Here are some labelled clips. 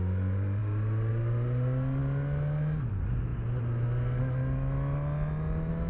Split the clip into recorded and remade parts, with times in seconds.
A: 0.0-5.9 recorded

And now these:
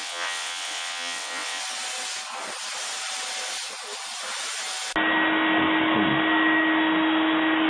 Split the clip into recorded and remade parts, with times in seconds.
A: 0.0-1.6 remade; 1.6-7.7 recorded

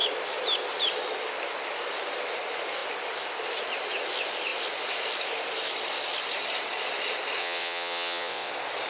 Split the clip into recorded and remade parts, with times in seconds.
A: 0.0-7.4 recorded; 7.4-8.5 remade; 8.5-8.9 recorded

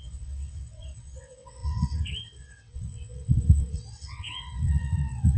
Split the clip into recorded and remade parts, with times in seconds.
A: 0.0-5.4 remade